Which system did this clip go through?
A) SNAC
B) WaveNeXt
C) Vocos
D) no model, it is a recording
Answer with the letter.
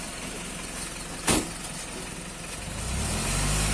D